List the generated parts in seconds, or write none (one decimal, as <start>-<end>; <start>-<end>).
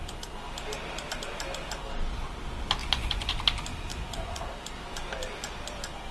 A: 2.8-3.3; 3.9-4.4